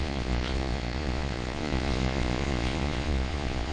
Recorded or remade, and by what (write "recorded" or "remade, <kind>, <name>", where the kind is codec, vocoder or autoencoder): remade, vocoder, Vocos